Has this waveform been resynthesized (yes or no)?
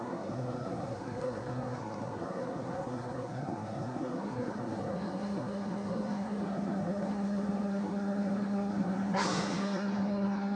yes